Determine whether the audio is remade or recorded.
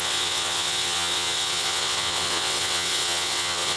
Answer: remade